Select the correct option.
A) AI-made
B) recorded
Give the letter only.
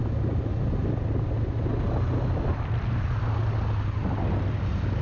B